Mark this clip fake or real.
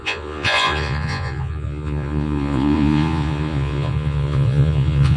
fake